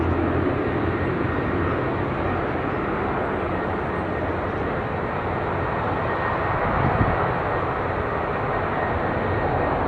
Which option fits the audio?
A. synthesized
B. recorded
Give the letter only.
B